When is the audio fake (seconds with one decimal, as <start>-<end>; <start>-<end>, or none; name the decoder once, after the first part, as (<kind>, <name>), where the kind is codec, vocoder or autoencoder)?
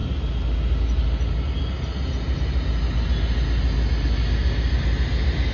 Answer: none